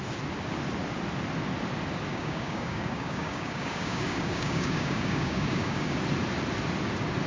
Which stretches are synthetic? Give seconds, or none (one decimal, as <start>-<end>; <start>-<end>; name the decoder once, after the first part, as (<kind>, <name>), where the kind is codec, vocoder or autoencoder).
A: 2.1-6.0 (codec, DAC)